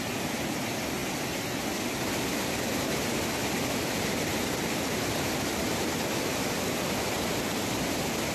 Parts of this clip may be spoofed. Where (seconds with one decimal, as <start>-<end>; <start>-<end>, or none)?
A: 3.4-6.1